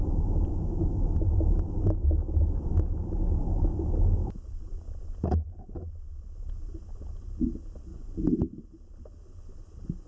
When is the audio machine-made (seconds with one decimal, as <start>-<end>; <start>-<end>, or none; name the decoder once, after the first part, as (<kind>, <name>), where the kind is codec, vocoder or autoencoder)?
7.9-8.4 (vocoder, Vocos)